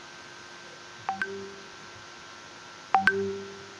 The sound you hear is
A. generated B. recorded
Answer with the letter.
B